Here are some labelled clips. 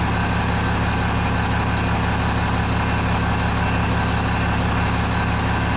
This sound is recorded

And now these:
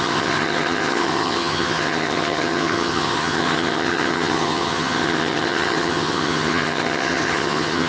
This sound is remade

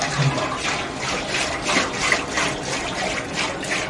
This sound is recorded